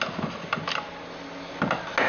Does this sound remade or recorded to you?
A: recorded